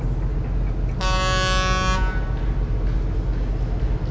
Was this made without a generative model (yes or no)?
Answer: yes